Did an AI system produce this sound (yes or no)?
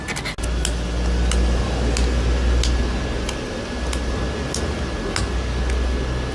no